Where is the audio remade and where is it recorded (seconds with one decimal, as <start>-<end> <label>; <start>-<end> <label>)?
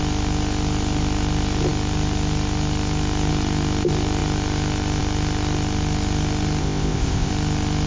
0.0-6.6 recorded; 6.6-7.3 remade; 7.3-7.9 recorded